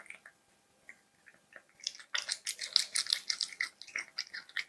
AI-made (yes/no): no